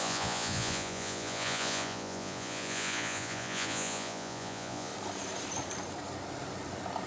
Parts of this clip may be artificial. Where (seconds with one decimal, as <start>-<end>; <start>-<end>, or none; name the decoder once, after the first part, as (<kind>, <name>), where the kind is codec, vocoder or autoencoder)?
0.0-4.9 (vocoder, Vocos)